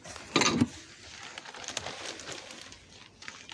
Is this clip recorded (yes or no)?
yes